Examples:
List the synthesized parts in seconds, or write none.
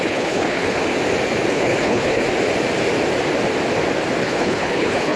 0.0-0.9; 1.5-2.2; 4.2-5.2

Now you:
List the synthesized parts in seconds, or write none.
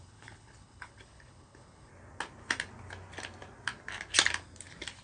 0.0-1.9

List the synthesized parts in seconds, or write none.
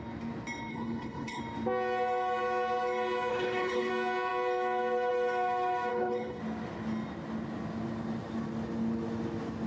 0.7-1.4; 3.3-3.9; 5.9-6.4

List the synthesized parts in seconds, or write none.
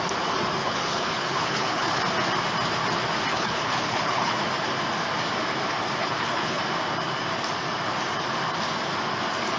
0.6-2.0; 3.3-4.5; 6.0-6.6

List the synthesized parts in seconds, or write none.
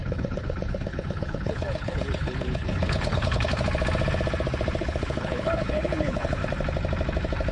0.0-3.5; 4.8-6.4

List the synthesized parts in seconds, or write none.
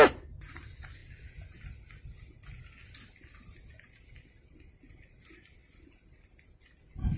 none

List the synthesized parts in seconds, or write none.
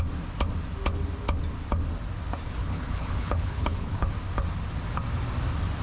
2.6-4.1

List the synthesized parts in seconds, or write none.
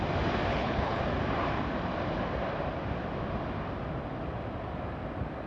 0.5-1.0